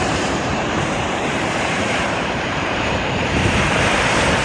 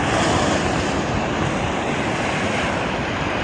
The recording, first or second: second